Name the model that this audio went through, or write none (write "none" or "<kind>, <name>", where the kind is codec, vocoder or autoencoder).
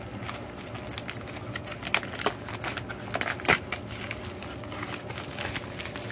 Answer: none